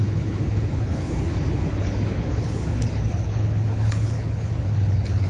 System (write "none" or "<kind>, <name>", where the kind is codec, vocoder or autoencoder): codec, HILCodec